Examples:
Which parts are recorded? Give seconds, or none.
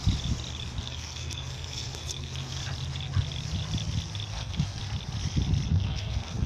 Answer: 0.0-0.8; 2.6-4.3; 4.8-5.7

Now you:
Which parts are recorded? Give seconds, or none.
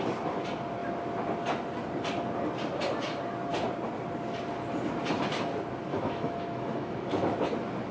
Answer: 0.0-5.9; 7.4-7.9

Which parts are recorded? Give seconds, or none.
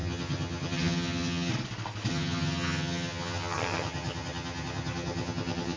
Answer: 1.5-2.1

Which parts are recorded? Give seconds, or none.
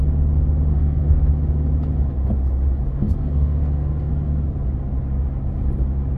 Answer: 0.0-0.7; 1.3-2.9; 4.1-6.2